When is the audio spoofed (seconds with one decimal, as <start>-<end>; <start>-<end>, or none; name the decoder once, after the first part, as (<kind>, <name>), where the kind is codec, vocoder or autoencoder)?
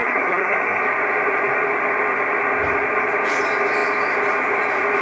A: 0.0-0.8 (codec, SNAC)